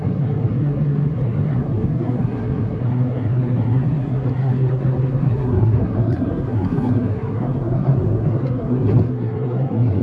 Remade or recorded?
remade